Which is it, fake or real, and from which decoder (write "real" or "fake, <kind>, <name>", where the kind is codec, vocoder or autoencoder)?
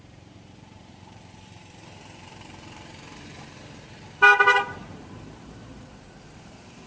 fake, vocoder, BigVGAN v2